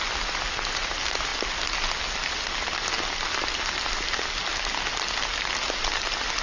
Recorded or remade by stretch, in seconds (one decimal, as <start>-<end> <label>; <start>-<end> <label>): 0.0-6.4 recorded